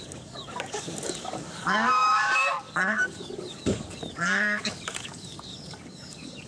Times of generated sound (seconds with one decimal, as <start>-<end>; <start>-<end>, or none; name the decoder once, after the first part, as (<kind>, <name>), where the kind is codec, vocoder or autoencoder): 0.0-6.5 (codec, DAC)